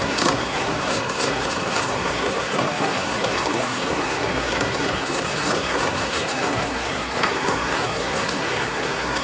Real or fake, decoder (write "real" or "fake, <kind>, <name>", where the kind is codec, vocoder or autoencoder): fake, codec, SNAC